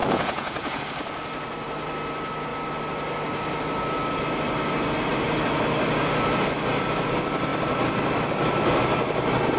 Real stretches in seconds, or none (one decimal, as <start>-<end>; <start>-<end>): 0.8-9.6